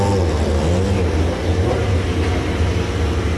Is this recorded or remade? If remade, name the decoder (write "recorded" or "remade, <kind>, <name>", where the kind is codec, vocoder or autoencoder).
recorded